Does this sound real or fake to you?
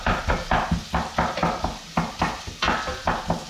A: real